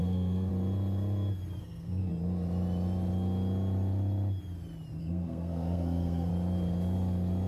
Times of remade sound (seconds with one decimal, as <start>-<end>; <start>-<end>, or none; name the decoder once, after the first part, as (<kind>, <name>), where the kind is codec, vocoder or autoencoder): 0.0-0.5 (codec, SNAC); 1.6-2.1; 5.0-6.3